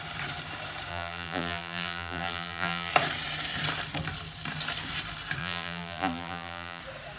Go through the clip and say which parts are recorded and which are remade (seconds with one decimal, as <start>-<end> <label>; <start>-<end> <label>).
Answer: 0.0-0.9 recorded; 0.9-2.9 remade; 2.9-5.4 recorded; 5.4-6.8 remade; 6.8-7.2 recorded